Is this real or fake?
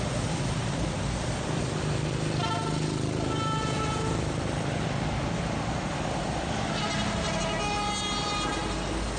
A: real